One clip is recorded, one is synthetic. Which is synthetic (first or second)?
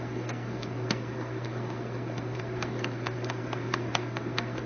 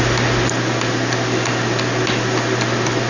first